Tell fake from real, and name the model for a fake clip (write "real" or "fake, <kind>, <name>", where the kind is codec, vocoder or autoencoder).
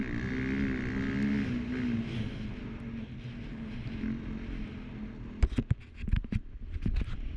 real